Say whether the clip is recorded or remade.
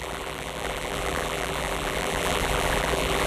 remade